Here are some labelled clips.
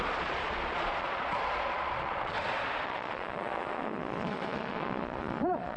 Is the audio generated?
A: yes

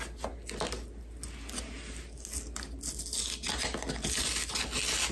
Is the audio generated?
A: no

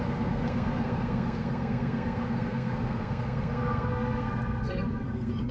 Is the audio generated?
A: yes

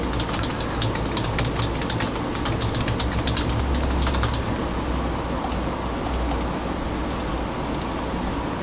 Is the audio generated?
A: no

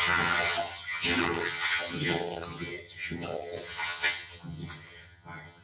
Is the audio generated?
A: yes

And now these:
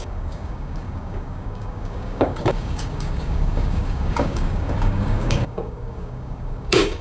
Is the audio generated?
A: yes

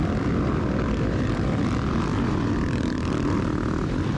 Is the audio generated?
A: yes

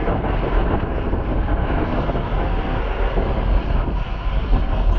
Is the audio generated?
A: yes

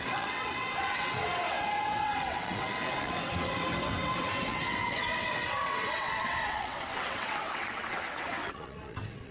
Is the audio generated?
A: yes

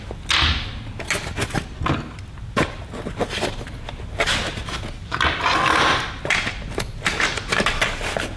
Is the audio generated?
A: no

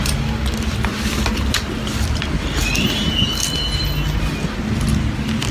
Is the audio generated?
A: no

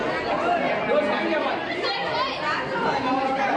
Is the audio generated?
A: no